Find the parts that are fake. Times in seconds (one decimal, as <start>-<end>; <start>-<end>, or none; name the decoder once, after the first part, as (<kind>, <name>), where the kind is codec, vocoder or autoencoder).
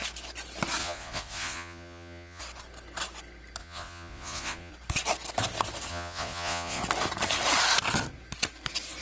0.8-2.4 (vocoder, Vocos); 3.6-4.7; 5.9-6.8